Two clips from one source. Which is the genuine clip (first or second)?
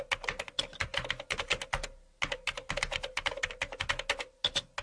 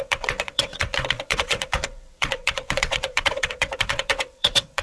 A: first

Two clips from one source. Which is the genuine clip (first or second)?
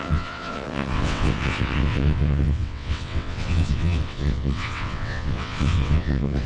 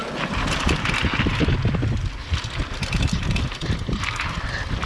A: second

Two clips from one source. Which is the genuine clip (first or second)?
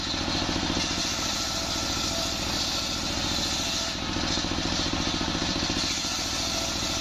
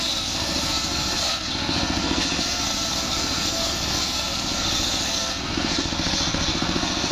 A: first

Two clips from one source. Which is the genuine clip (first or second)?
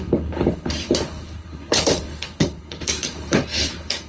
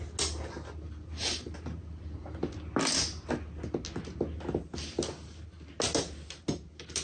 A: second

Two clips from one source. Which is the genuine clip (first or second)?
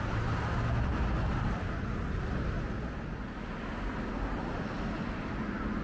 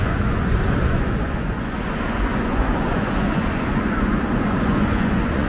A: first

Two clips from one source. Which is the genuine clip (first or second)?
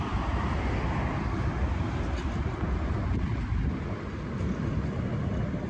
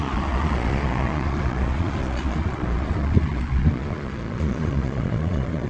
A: first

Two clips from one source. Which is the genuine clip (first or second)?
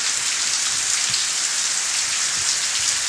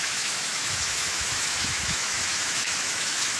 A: first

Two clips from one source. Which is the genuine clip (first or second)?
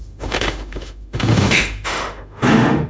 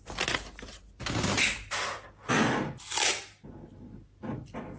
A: second